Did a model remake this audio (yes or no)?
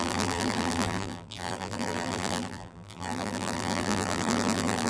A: yes